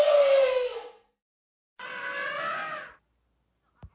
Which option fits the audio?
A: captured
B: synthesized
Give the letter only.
A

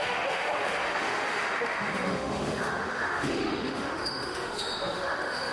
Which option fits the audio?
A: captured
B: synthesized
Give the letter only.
B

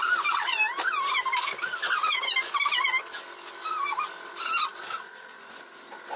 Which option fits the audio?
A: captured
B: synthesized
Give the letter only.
A